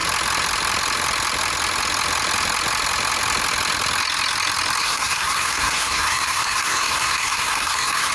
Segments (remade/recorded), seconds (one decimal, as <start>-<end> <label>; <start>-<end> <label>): 0.0-4.8 recorded; 4.8-8.1 remade